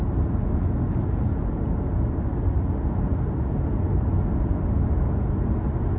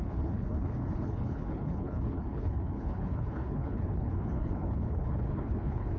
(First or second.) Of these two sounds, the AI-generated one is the second